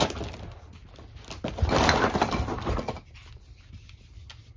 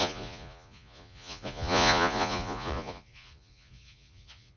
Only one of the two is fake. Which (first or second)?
second